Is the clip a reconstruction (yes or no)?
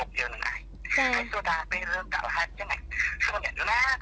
no